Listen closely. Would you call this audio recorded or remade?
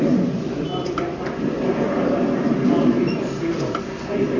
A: recorded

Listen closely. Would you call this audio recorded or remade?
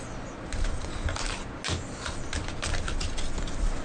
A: recorded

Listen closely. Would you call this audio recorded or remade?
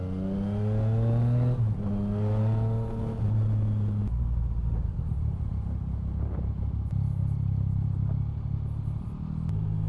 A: recorded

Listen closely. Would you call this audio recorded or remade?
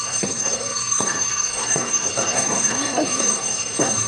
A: remade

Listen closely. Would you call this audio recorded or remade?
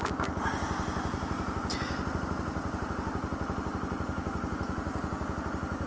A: recorded